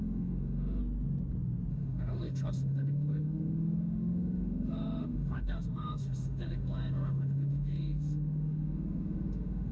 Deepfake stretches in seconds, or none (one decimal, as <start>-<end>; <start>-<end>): 0.0-0.8; 1.7-9.7